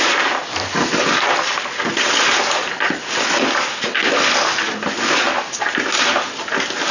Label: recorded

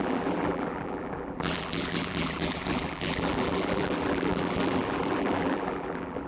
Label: remade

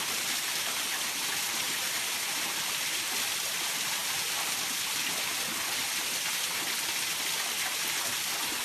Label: recorded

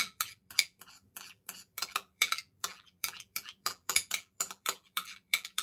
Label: remade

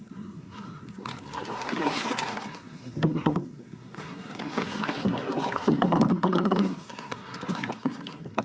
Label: remade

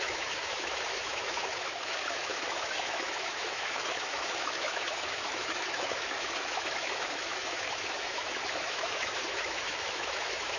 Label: remade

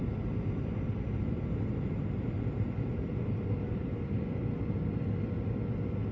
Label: recorded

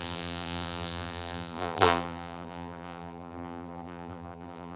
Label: remade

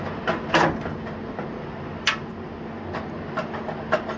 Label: recorded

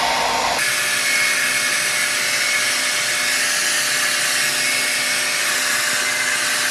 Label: recorded